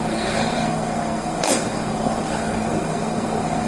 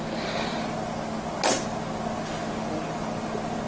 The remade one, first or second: first